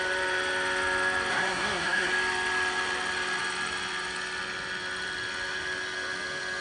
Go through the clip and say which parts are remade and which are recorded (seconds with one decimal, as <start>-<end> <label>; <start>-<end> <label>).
0.0-1.3 recorded; 1.3-2.1 remade; 2.1-6.6 recorded